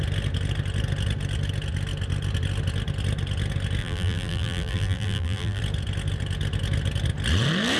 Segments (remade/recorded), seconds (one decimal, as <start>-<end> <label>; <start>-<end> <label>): 0.0-3.8 recorded; 3.8-5.6 remade; 5.6-7.8 recorded